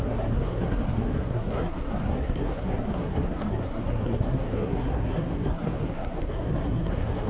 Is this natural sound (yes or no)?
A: no